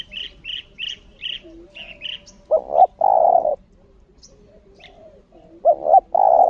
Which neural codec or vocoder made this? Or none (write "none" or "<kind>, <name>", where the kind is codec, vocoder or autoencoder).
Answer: none